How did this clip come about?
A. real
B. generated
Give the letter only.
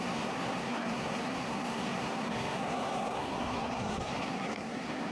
B